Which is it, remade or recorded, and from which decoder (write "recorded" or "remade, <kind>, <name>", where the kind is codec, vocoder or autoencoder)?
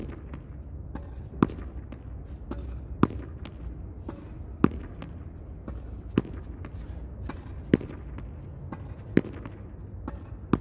recorded